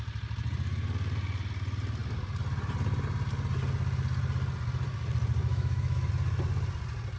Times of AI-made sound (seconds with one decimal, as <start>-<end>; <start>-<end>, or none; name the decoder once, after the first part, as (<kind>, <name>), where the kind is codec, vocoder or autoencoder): 5.4-6.1 (autoencoder, DAC-VAE)